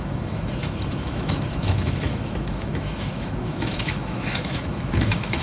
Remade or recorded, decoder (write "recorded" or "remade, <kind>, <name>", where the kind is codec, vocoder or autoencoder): remade, autoencoder, DAC-VAE